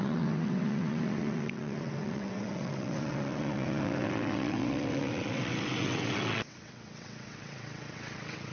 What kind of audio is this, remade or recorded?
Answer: remade